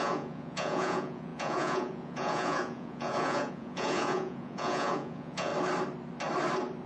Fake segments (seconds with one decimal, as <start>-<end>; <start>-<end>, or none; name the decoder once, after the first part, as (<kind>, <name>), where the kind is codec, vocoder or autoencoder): 0.0-5.5 (vocoder, Vocos)